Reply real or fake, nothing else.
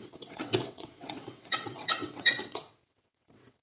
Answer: fake